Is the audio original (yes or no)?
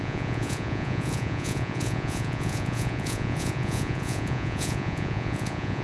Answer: no